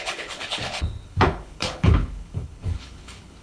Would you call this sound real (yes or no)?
no